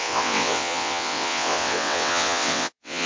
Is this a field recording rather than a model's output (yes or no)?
no